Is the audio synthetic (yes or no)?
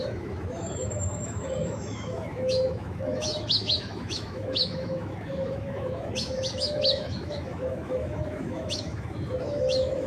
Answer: yes